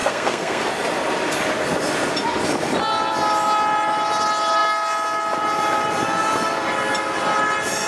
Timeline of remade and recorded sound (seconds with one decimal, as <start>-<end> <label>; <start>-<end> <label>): 0.0-0.7 remade; 0.7-7.9 recorded